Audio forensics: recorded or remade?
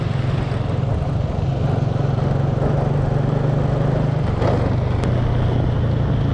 recorded